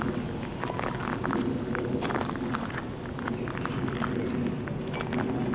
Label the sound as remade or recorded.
recorded